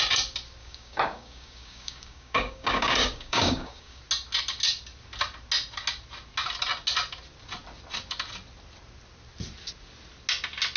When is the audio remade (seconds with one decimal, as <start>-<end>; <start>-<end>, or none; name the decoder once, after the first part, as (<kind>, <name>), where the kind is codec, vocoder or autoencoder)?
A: 0.6-4.0 (codec, DAC)